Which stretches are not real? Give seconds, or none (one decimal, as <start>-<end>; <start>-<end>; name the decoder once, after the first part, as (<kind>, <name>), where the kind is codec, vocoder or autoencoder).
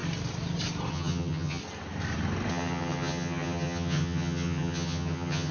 0.9-1.6 (vocoder, HiFi-GAN); 2.5-5.5